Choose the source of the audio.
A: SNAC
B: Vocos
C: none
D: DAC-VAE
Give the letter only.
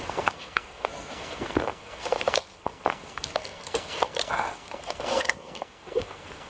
A